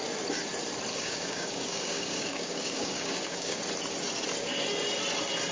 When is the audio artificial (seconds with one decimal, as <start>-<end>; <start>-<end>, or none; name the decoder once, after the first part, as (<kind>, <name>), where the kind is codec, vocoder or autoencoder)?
0.9-3.6 (codec, DAC)